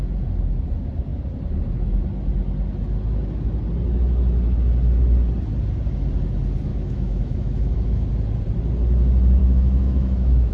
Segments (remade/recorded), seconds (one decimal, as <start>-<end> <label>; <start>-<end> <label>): 0.0-6.7 recorded; 6.7-8.1 remade; 8.1-9.4 recorded; 9.4-10.5 remade